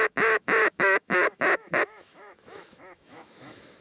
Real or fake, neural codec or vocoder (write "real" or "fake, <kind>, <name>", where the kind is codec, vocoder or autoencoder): fake, autoencoder, DAC-VAE